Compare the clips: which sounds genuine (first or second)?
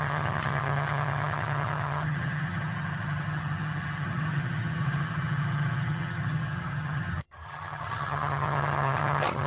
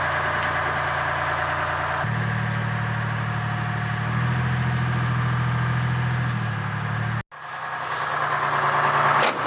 second